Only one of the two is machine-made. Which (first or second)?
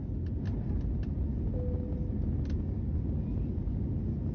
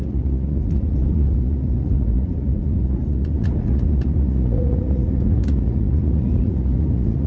second